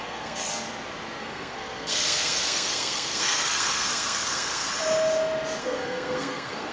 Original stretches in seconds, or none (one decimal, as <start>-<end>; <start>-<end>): 0.5-1.2; 4.7-5.6